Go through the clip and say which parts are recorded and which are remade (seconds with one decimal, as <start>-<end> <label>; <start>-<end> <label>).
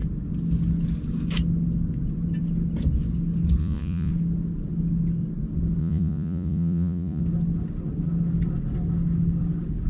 0.0-3.6 recorded; 3.6-4.1 remade; 4.1-5.8 recorded; 5.8-7.2 remade; 7.2-9.9 recorded